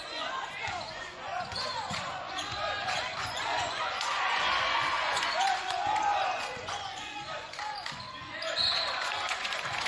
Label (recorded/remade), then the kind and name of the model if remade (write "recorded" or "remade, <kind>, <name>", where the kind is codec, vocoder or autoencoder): remade, vocoder, Vocos